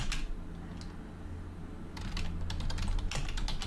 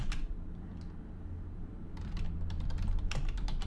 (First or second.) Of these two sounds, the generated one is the second